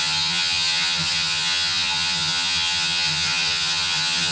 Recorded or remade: remade